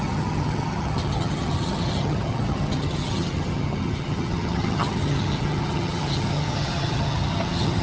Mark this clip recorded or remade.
remade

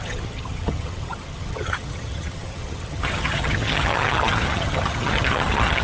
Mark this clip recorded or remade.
remade